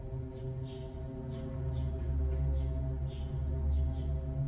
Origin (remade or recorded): recorded